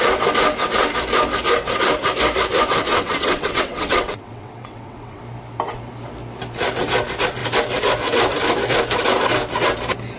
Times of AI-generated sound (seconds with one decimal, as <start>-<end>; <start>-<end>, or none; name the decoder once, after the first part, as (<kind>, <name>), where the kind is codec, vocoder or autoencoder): 2.9-5.2 (vocoder, WaveNeXt)